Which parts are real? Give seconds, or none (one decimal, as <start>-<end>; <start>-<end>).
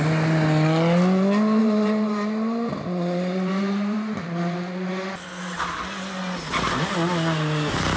0.0-1.6; 4.9-8.0